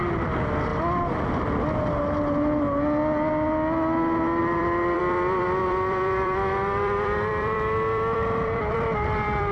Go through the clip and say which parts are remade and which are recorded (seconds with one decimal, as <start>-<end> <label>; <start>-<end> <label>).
0.0-0.7 remade; 0.7-4.4 recorded; 4.4-9.5 remade